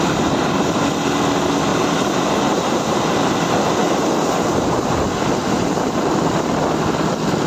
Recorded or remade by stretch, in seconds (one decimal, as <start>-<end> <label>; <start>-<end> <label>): 0.0-1.7 recorded; 1.7-3.3 remade; 3.3-3.8 recorded; 3.8-5.0 remade; 5.0-5.4 recorded; 5.4-6.1 remade; 6.1-7.5 recorded